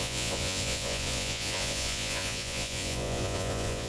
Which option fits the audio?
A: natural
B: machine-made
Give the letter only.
B